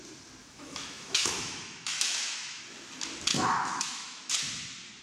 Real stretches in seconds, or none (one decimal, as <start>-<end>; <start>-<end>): 0.0-0.4; 2.6-3.3; 4.3-5.0